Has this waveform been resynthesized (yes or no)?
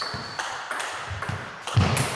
no